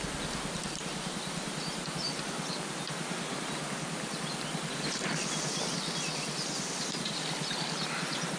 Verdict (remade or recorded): recorded